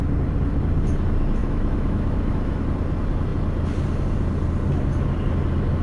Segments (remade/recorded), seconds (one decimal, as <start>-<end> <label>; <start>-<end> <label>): 0.0-1.4 recorded; 1.4-2.6 remade; 2.6-5.8 recorded